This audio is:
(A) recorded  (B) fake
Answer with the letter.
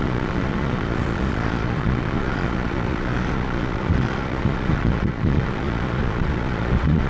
B